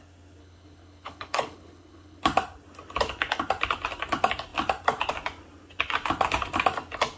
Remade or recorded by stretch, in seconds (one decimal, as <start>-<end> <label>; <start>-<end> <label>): 0.0-0.4 recorded; 0.4-2.2 remade; 2.2-7.2 recorded